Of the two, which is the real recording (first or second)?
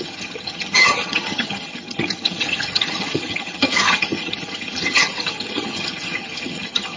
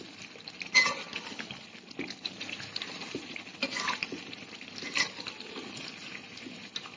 second